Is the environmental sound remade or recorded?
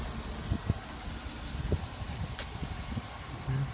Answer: recorded